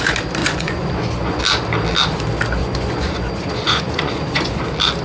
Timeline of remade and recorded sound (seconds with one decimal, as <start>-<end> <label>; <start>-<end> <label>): 0.0-0.4 recorded; 0.4-1.4 remade; 1.4-2.6 recorded; 2.6-4.6 remade; 4.6-5.0 recorded